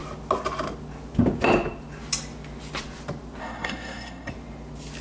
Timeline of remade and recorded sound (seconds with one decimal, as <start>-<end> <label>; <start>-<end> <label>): 0.0-3.4 recorded; 3.4-4.3 remade; 4.3-5.0 recorded